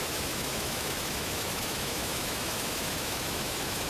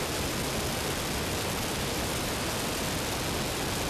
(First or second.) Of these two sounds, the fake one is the first